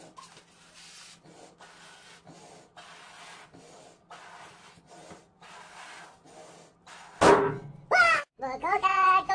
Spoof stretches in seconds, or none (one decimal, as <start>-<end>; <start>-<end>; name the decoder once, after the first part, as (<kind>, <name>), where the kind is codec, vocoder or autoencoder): 8.6-9.3 (vocoder, WaveNeXt)